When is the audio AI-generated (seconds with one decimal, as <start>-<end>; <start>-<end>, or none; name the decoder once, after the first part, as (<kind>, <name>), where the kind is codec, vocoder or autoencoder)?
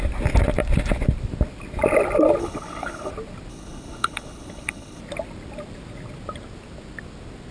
2.4-3.1 (codec, HILCodec); 3.5-5.0